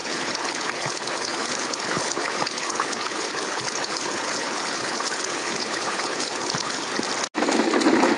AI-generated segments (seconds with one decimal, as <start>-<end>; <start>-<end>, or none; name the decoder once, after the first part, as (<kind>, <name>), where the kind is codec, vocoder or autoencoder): 0.0-6.9 (codec, HILCodec)